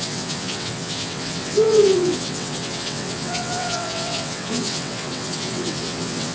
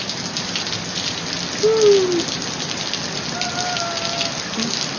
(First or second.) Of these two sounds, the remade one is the first